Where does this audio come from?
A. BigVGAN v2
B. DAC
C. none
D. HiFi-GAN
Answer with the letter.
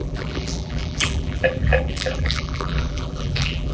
A